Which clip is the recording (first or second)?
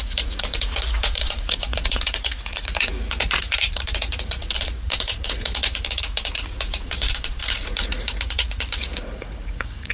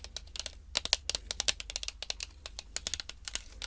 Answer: second